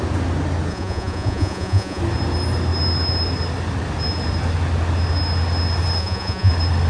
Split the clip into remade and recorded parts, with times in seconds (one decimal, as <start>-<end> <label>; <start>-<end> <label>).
0.0-0.7 recorded; 0.7-2.0 remade; 2.0-6.0 recorded; 6.0-6.5 remade; 6.5-6.9 recorded